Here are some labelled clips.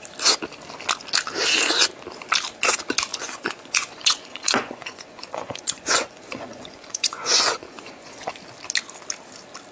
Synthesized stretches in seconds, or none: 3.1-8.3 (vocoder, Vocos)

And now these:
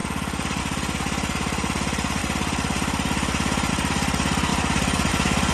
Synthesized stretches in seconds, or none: 4.5-5.1 (vocoder, BigVGAN v2)

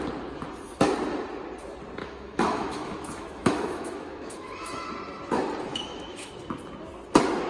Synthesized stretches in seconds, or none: 2.0-4.9 (autoencoder, DAC-VAE); 5.7-6.3

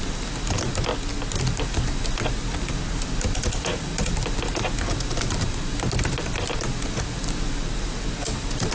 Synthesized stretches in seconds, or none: none

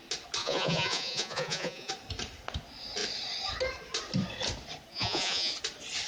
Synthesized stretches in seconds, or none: 0.4-1.9 (vocoder, Vocos); 4.9-5.5